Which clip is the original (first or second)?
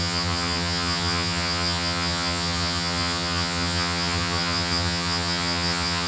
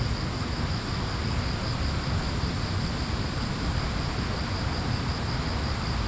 second